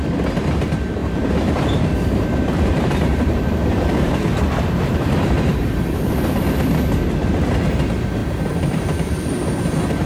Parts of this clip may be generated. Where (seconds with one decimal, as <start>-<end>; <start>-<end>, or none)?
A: 1.0-6.1; 8.2-9.3